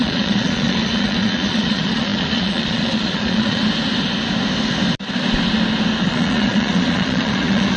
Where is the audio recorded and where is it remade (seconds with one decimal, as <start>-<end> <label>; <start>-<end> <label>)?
0.0-3.6 remade; 3.6-6.0 recorded; 6.0-7.8 remade